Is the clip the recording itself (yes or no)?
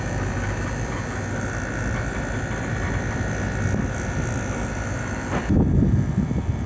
yes